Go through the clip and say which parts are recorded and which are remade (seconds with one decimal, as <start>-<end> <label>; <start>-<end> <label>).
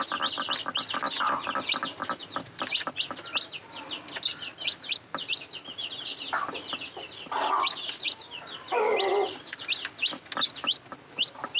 0.0-2.2 recorded; 2.2-2.9 remade; 2.9-11.6 recorded